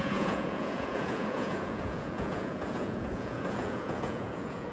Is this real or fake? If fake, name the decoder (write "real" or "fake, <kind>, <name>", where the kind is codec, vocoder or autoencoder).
fake, vocoder, Vocos